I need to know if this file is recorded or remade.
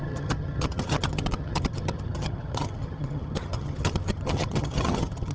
remade